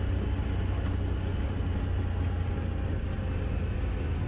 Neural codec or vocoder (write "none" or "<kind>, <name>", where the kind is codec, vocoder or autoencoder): none